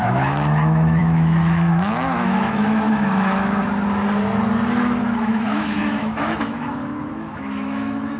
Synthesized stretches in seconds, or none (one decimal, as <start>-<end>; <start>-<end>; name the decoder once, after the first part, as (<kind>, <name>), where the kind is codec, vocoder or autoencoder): 0.0-3.6 (autoencoder, DAC-VAE); 5.0-8.2